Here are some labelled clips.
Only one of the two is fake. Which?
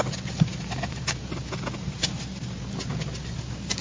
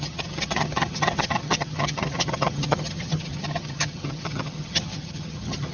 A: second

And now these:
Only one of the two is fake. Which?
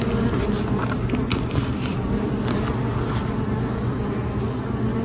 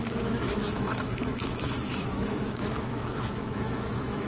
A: second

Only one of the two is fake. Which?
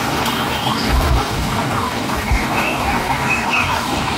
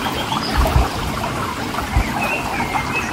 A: first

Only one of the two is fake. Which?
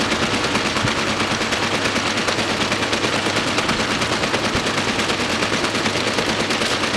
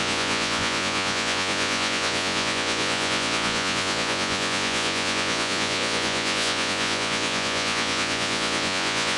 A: second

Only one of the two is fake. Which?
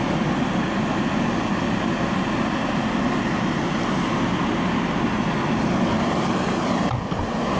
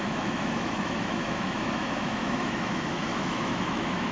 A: second